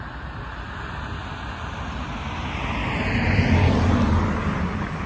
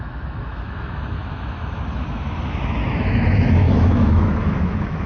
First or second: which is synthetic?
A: second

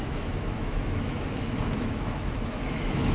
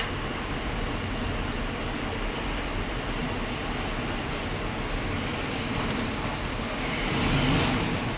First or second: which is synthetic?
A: first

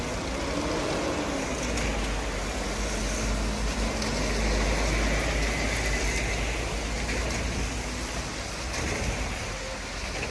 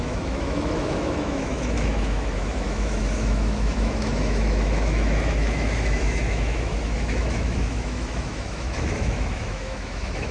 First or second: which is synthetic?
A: second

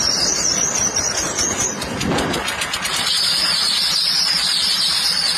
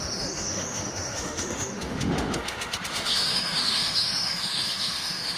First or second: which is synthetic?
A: second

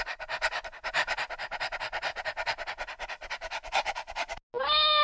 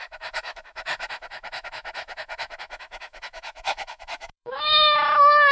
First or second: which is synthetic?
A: second